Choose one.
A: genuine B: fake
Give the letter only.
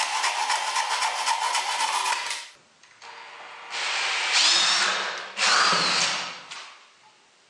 A